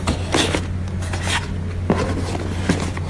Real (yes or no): yes